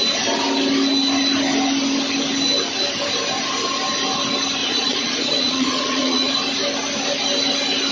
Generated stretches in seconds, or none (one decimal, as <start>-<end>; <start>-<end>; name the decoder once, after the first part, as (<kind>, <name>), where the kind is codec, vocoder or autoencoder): 4.6-6.3 (vocoder, Vocos)